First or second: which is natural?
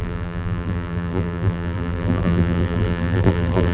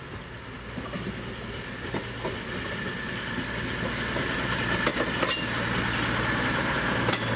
second